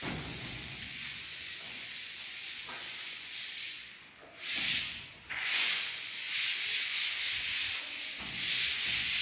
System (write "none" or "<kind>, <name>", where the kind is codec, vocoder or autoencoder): vocoder, Vocos